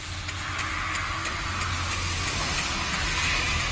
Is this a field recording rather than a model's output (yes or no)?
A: yes